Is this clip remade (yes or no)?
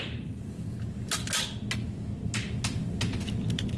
no